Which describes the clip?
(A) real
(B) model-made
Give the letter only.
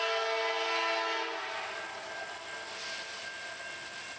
A